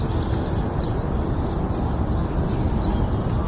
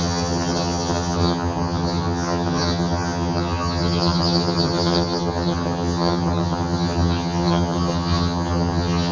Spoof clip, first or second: second